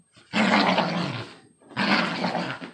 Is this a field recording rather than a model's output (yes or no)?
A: yes